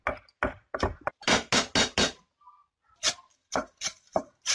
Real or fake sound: real